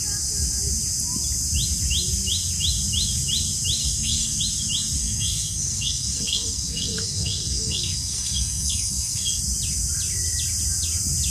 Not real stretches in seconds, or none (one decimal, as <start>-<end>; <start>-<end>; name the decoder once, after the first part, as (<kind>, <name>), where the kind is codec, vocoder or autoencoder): 3.8-4.4 (codec, SNAC); 5.0-9.4